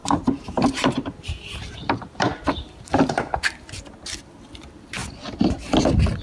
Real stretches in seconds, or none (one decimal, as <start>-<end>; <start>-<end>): 3.7-6.2